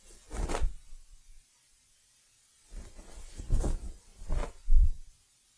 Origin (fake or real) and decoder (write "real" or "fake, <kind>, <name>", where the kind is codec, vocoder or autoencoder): fake, vocoder, BigVGAN v2